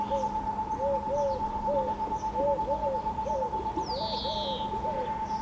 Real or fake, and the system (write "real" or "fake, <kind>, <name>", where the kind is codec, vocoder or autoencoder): real